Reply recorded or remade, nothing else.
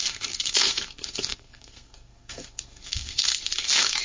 remade